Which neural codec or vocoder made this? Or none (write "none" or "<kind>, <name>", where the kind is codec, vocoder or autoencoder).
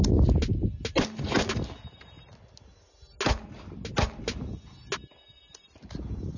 none